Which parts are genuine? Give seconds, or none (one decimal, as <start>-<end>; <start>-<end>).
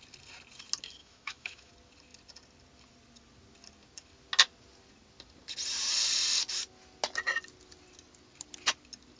0.0-1.0; 1.7-9.2